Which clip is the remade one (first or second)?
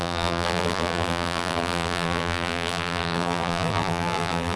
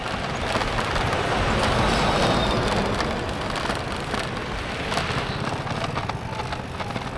first